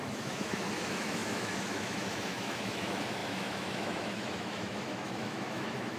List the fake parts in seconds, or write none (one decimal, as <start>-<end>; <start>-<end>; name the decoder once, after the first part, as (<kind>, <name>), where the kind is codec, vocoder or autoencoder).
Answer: 0.0-6.0 (autoencoder, DAC-VAE)